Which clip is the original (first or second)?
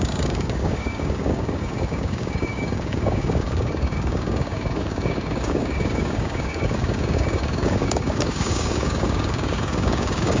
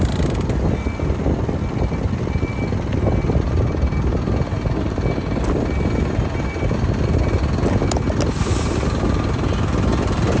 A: second